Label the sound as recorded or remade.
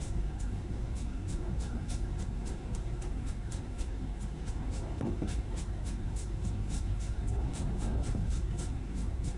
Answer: remade